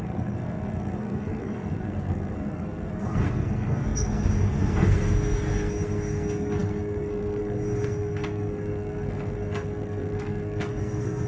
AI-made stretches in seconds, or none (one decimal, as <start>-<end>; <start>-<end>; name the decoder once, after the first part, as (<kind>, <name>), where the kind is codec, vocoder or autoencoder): 0.0-11.3 (codec, SNAC)